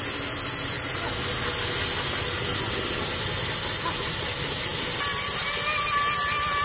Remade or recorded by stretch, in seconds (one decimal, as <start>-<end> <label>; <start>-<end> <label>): 0.0-6.6 recorded